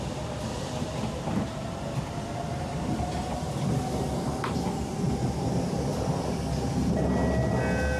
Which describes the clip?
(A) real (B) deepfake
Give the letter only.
A